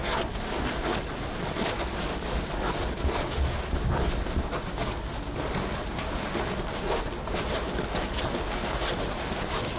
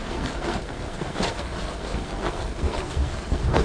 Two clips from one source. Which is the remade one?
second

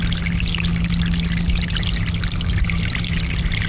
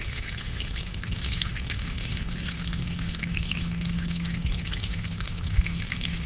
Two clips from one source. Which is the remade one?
second